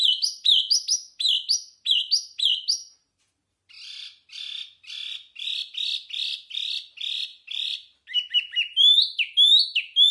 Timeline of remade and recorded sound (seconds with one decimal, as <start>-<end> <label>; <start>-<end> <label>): 0.0-10.1 recorded